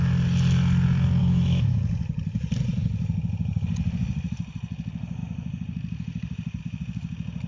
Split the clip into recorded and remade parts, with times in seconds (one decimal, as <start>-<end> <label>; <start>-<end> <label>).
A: 0.0-1.2 recorded; 1.2-1.8 remade; 1.8-7.5 recorded

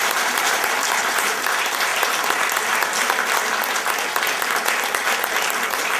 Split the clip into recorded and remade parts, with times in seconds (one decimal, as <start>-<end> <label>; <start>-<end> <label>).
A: 0.0-1.9 remade; 1.9-5.5 recorded; 5.5-6.0 remade